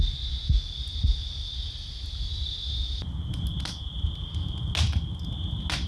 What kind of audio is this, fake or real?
real